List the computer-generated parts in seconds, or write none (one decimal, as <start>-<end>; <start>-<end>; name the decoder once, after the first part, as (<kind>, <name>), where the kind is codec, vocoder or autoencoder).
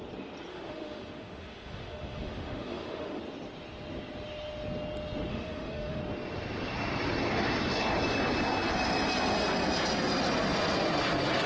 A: 0.5-3.2 (autoencoder, DAC-VAE); 5.3-6.0